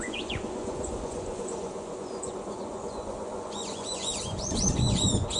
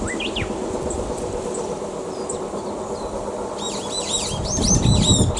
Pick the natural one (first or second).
second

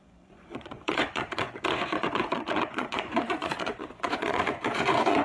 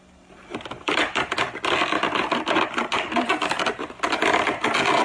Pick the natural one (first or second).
second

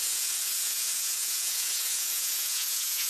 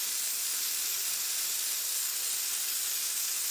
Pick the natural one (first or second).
second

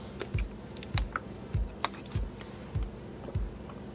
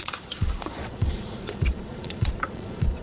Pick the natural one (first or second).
first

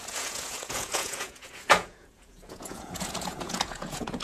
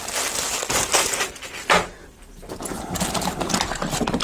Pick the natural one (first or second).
second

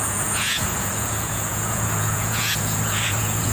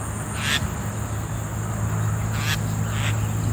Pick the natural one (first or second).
second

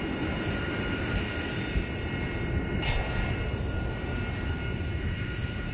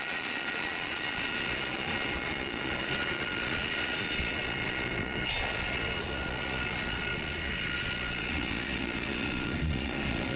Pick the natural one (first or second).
first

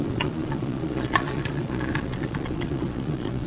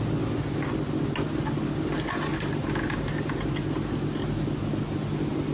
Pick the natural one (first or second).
second